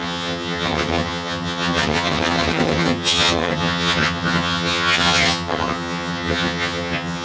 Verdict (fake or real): fake